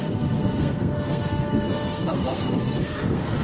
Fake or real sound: fake